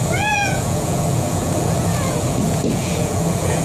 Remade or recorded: remade